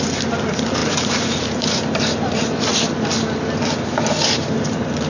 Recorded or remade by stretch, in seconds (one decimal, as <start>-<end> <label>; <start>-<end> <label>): 0.0-2.7 remade; 2.7-4.1 recorded; 4.1-5.1 remade